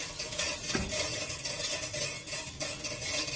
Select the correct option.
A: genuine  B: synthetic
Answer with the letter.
B